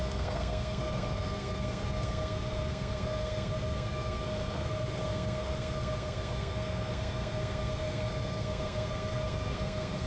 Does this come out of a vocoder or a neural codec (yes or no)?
yes